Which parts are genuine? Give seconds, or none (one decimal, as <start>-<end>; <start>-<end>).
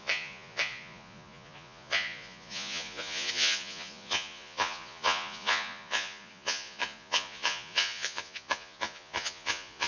none